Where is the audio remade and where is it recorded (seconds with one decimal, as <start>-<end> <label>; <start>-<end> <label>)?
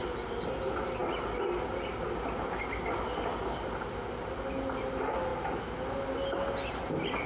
0.0-7.3 recorded